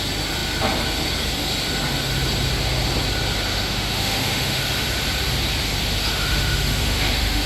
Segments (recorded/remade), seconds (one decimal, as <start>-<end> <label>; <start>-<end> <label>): 0.0-3.5 recorded; 3.5-4.6 remade; 4.6-6.1 recorded; 6.1-7.5 remade

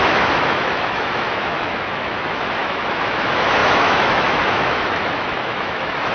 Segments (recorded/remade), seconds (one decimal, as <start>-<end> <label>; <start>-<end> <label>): 0.0-6.1 remade

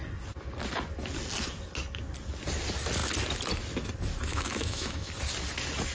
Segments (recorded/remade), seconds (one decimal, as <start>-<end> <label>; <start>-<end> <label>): 0.0-4.3 recorded; 4.3-5.1 remade; 5.1-5.9 recorded

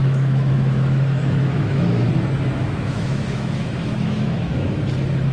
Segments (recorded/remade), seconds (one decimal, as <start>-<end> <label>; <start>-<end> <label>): 0.0-2.1 remade; 2.1-2.6 recorded; 2.6-4.8 remade; 4.8-5.3 recorded

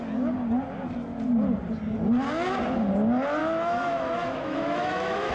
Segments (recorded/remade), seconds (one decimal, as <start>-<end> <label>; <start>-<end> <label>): 0.0-3.4 recorded; 3.4-5.3 remade

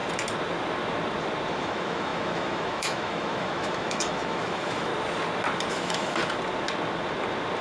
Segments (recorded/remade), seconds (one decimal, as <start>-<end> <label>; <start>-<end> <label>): 0.0-1.5 recorded; 1.5-4.9 remade; 4.9-5.7 recorded; 5.7-6.2 remade; 6.2-7.6 recorded

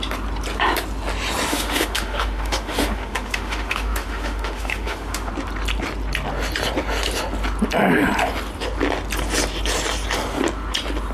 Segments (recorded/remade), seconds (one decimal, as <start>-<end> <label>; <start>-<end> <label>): 0.0-1.5 recorded; 1.5-5.3 remade; 5.3-11.1 recorded

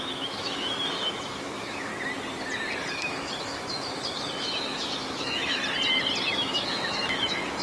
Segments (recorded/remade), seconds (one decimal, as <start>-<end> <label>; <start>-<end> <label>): 0.0-1.9 remade; 1.9-2.9 recorded; 2.9-5.6 remade; 5.6-6.3 recorded; 6.3-7.6 remade